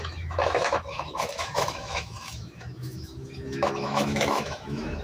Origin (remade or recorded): remade